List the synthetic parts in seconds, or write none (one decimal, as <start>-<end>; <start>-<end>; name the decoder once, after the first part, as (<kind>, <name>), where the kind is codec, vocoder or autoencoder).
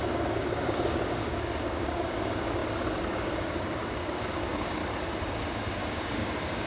0.0-4.8 (codec, DAC); 5.8-6.7